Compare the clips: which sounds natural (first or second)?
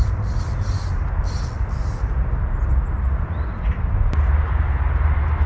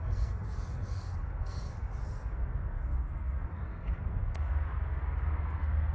first